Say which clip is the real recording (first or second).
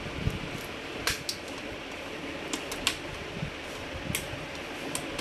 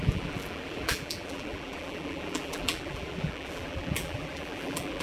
first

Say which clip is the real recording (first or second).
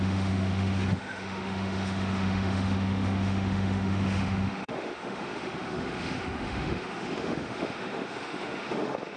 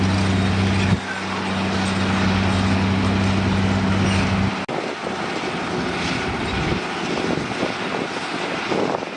second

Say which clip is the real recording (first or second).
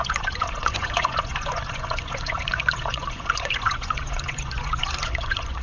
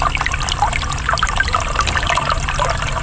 second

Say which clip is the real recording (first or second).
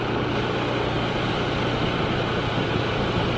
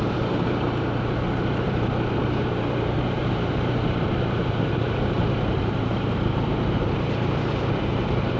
first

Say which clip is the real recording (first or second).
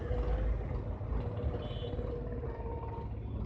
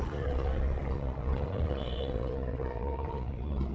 first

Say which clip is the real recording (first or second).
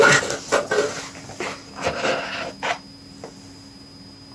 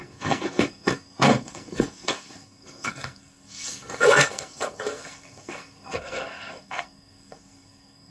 first